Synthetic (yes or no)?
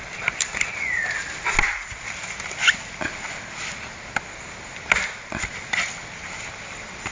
no